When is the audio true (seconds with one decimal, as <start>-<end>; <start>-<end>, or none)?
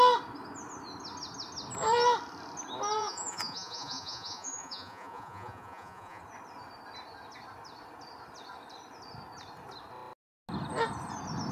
0.0-3.0; 6.2-11.5